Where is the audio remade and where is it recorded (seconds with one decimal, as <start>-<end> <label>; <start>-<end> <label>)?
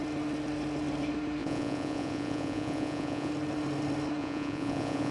0.0-1.4 recorded; 1.4-3.3 remade; 3.3-4.2 recorded; 4.2-5.1 remade